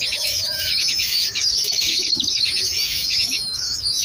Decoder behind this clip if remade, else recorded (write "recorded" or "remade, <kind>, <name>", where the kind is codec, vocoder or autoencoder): remade, autoencoder, DAC-VAE